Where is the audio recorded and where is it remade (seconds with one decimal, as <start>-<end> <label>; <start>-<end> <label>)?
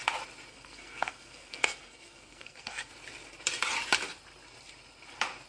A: 0.0-0.5 recorded; 0.5-2.9 remade; 2.9-5.5 recorded